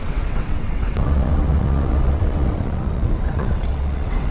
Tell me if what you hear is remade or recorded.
remade